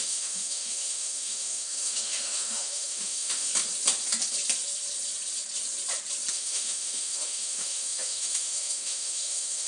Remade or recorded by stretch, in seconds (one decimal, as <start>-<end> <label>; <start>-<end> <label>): 0.0-3.5 remade; 3.5-6.3 recorded; 6.3-9.7 remade